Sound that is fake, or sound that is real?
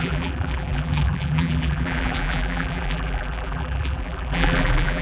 fake